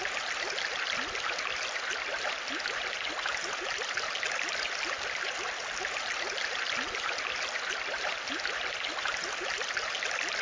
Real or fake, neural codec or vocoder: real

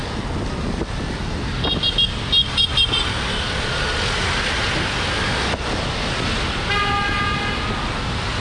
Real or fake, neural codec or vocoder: real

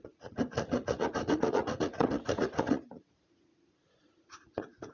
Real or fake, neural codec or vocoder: fake, vocoder, Vocos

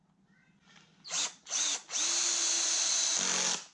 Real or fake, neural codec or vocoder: real